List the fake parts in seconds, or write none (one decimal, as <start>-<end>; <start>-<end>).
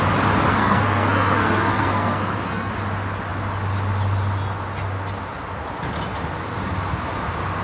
0.5-2.7